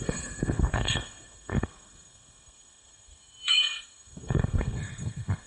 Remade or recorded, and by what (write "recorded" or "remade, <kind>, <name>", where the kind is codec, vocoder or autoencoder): remade, codec, SNAC